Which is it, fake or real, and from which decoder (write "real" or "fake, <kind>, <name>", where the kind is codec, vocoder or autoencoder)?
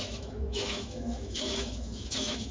fake, autoencoder, DAC-VAE